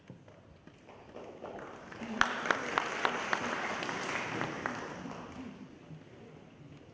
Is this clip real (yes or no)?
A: yes